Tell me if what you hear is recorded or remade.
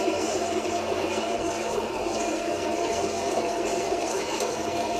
remade